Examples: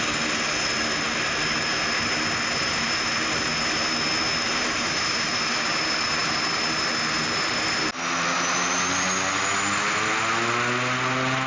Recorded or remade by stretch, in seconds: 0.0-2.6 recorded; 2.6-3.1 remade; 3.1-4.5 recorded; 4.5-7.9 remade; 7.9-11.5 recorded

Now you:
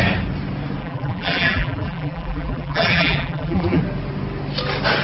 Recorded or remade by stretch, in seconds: 0.0-0.8 recorded; 0.8-3.8 remade; 3.8-5.0 recorded

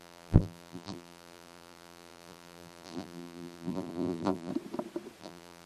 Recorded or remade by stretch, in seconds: 0.0-4.5 remade; 4.5-5.2 recorded; 5.2-5.7 remade

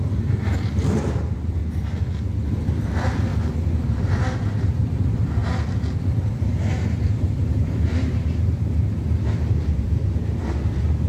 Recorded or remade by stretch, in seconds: 0.0-1.6 remade; 1.6-2.5 recorded; 2.5-3.3 remade; 3.3-4.0 recorded; 4.0-5.4 remade; 5.4-6.0 recorded; 6.0-11.1 remade

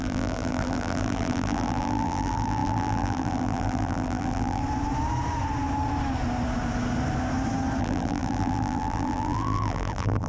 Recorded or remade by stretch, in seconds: 0.0-4.6 remade; 4.6-7.8 recorded; 7.8-10.3 remade

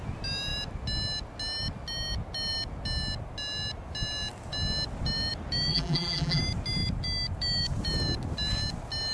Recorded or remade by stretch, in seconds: 0.0-5.7 recorded; 5.7-6.4 remade; 6.4-9.1 recorded

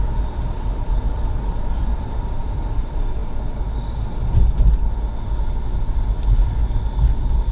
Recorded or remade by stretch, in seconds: 0.0-3.2 remade; 3.2-5.8 recorded; 5.8-6.6 remade; 6.6-7.5 recorded

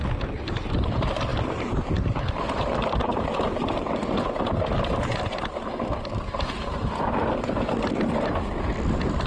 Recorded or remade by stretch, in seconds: 0.0-1.3 recorded; 1.3-4.4 remade; 4.4-9.3 recorded